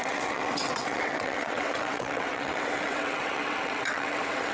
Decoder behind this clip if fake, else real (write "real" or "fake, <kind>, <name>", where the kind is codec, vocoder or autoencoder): fake, vocoder, WaveNeXt